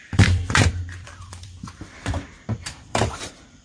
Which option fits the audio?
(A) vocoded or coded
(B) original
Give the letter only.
A